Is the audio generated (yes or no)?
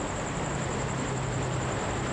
yes